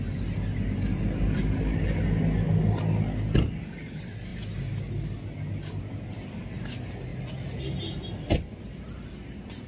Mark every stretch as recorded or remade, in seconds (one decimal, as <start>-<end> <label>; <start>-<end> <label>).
0.0-9.7 recorded